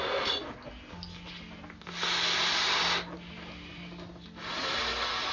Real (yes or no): yes